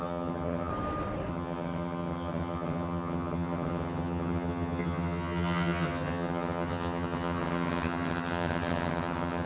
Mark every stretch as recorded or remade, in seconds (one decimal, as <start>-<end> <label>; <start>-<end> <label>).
0.0-0.7 remade; 0.7-1.3 recorded; 1.3-9.5 remade